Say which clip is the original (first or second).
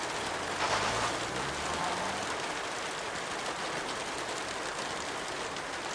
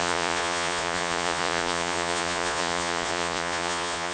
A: first